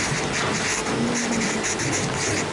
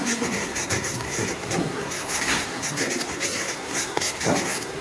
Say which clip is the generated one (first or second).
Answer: second